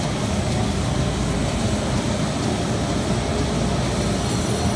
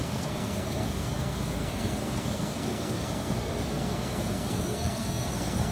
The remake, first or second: second